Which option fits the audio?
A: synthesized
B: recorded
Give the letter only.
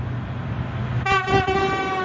B